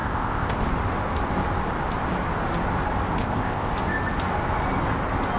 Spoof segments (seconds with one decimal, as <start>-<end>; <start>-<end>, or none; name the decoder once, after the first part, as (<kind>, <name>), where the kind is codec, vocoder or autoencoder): 0.0-0.6 (codec, ZipCodec); 3.2-3.7